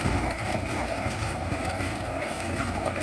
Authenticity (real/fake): fake